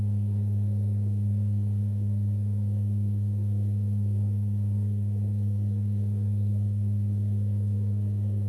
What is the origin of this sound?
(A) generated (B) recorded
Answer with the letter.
A